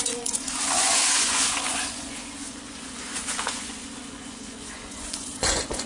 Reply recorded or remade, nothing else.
remade